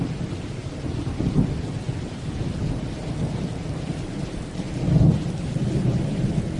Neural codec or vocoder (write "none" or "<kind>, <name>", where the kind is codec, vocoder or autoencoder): none